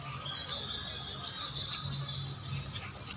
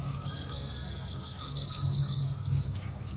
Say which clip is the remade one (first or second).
second